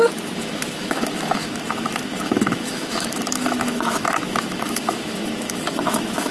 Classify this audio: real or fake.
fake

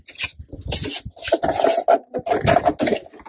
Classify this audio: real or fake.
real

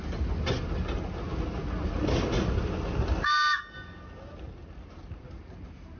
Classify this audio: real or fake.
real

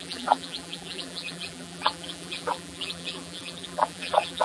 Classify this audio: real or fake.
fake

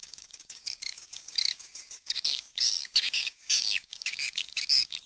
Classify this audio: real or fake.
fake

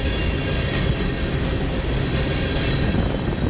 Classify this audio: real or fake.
real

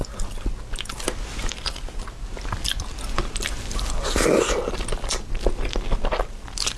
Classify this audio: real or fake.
real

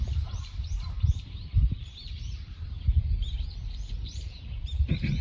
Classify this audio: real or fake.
fake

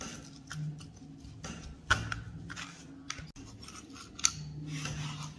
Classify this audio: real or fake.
real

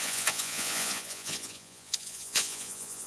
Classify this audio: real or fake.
fake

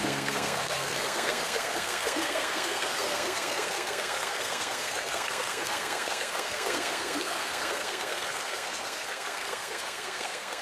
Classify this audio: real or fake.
fake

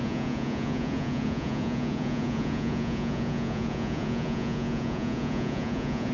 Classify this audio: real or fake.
fake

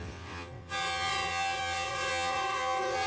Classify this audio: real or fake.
fake